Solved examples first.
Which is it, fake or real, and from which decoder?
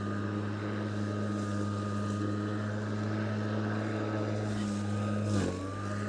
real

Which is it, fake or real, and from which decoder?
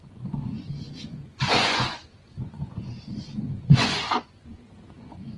fake, vocoder, Vocos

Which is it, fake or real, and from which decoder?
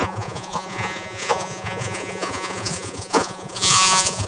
fake, vocoder, Vocos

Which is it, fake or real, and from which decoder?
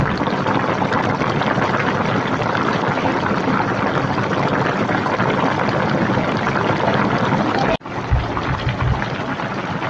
real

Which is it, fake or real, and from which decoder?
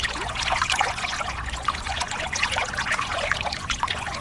fake, vocoder, Vocos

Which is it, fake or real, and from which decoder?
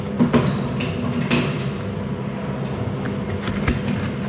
real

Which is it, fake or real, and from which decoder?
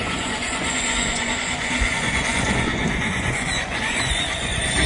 fake, vocoder, Vocos